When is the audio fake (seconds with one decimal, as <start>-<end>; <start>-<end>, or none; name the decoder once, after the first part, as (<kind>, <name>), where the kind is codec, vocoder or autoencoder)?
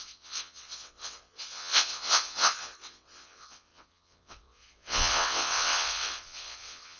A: 0.0-7.0 (vocoder, WaveNeXt)